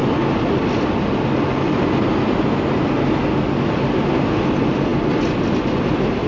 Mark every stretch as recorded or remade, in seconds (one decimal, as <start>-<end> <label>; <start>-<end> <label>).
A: 0.0-6.3 recorded